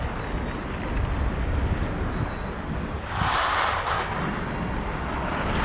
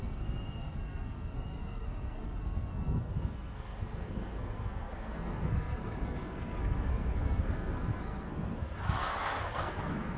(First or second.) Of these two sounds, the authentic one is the first